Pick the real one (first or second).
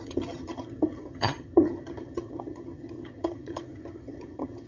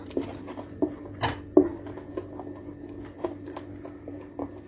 second